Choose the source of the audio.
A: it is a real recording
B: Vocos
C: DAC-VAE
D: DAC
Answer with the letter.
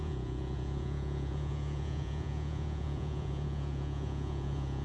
B